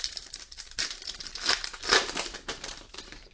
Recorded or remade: remade